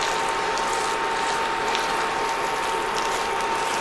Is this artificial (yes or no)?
no